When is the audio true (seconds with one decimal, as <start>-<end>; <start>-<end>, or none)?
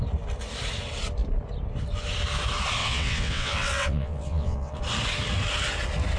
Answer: 0.0-2.8; 4.8-6.2